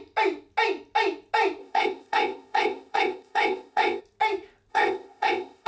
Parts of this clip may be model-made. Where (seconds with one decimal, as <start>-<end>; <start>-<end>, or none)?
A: 1.6-4.0; 4.7-5.7